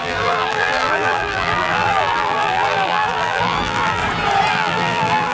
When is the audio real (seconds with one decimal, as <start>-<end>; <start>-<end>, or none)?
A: 4.0-4.5